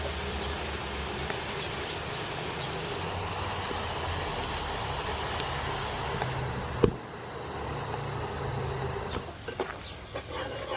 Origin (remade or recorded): recorded